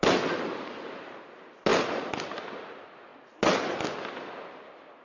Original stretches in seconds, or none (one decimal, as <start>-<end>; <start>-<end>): 0.0-5.0